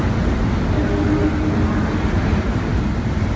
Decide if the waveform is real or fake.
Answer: real